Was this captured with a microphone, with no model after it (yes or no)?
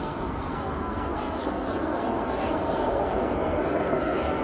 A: no